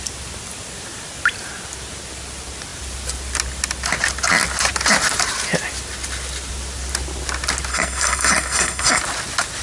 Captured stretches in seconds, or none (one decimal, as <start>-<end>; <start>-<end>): 0.0-7.7; 9.0-9.6